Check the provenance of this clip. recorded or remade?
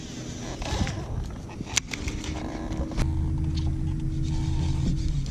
recorded